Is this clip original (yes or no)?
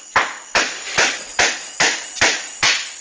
no